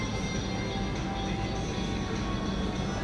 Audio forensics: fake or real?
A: real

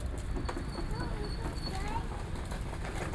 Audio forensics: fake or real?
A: real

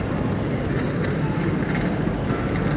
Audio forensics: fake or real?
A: real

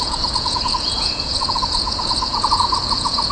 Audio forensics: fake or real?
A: fake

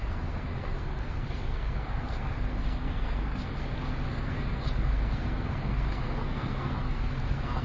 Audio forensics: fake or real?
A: fake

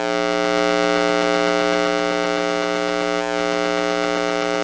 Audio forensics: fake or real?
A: real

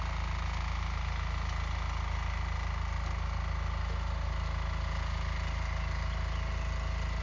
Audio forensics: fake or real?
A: real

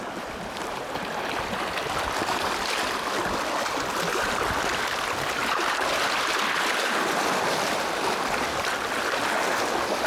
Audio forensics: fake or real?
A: real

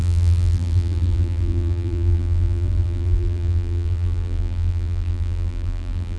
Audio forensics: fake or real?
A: fake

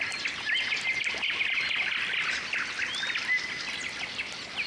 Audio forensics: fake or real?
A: real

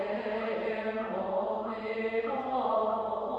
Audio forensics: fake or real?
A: fake